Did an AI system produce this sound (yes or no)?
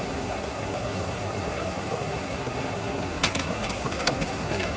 yes